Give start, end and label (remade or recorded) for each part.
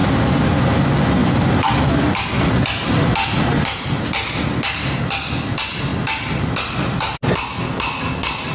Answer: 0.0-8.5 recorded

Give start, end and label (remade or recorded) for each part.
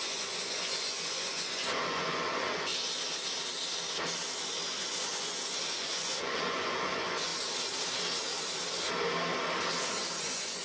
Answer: 0.0-2.7 remade; 2.7-4.8 recorded; 4.8-7.3 remade; 7.3-10.2 recorded; 10.2-10.6 remade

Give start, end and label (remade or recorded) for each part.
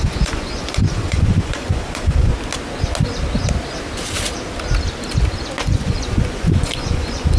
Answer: 0.0-2.3 remade; 2.3-5.6 recorded; 5.6-7.4 remade